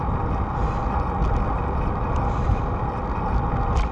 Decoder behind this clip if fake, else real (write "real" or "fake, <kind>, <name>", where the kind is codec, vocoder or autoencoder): real